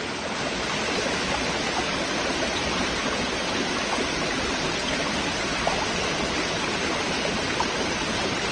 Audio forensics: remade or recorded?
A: recorded